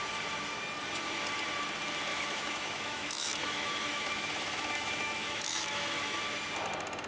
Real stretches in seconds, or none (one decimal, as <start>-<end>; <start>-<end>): 0.0-2.1; 6.2-7.1